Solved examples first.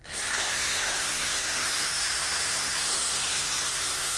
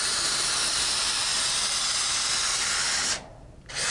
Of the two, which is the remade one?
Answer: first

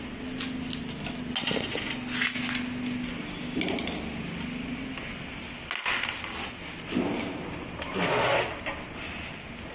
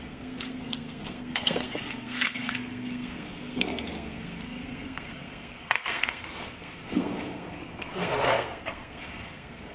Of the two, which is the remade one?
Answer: second